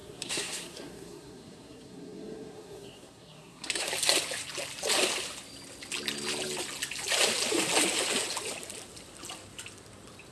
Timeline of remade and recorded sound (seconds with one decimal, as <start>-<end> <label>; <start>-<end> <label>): 0.0-3.9 remade; 3.9-10.3 recorded

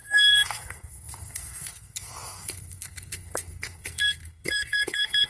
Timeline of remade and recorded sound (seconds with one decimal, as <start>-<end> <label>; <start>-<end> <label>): 0.0-5.3 remade

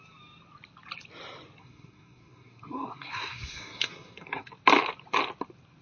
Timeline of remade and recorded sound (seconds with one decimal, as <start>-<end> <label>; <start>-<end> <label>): 0.0-1.6 recorded; 1.6-4.5 remade; 4.5-5.8 recorded

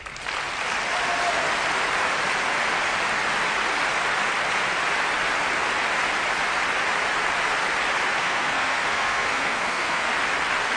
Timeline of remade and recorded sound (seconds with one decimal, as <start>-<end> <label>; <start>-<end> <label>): 0.0-8.2 recorded; 8.2-10.1 remade; 10.1-10.8 recorded

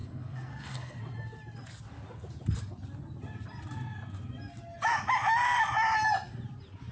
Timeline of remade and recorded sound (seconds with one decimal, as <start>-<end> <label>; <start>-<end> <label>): 0.0-1.0 remade; 1.0-6.9 recorded

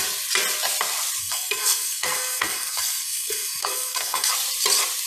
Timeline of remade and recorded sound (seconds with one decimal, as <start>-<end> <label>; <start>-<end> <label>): 0.0-1.2 recorded; 1.2-4.3 remade; 4.3-5.1 recorded

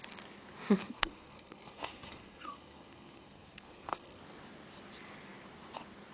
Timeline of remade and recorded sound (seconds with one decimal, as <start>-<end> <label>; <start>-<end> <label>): 0.0-0.8 recorded; 0.8-4.2 remade; 4.2-6.1 recorded

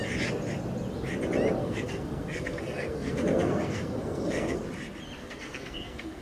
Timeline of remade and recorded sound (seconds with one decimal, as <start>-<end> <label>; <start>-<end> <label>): 0.0-1.6 recorded; 1.6-4.6 remade; 4.6-5.2 recorded; 5.2-6.2 remade